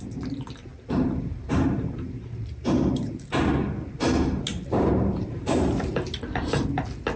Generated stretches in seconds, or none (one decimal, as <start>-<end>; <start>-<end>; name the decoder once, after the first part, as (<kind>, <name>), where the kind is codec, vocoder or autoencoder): 0.7-3.4 (vocoder, BigVGAN v2); 4.5-5.9